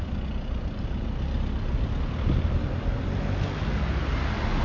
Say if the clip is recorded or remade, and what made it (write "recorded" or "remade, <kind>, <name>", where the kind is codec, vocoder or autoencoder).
recorded